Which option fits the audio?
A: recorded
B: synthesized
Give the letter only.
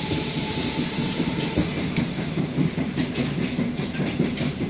B